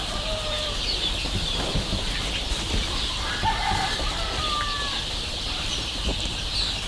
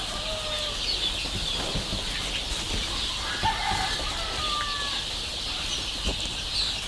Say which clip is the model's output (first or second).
first